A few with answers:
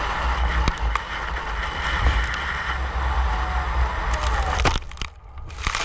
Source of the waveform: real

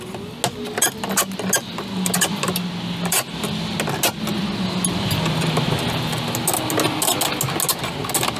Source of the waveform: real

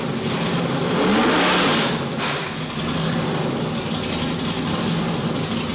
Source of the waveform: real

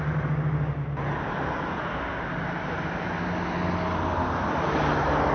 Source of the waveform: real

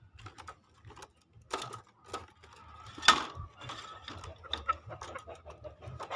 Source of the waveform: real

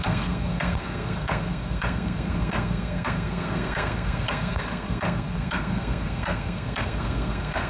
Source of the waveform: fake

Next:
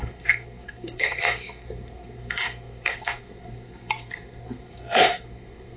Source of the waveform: fake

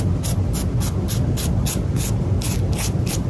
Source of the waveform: real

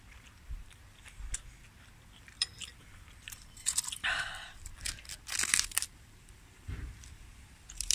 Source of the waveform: fake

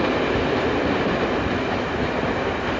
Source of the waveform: real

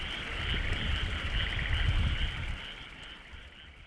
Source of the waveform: real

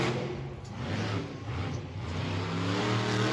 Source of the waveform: real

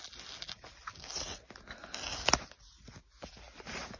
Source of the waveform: real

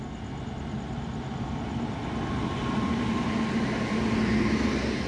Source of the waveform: real